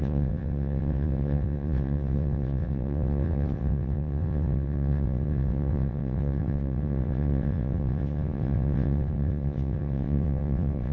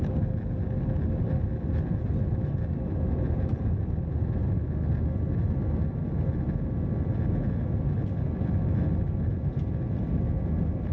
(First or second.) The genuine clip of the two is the second